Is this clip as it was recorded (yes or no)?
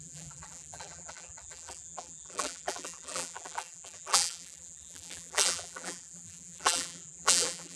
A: no